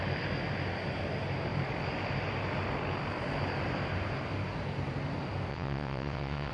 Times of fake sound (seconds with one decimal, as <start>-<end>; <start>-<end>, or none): 5.5-6.5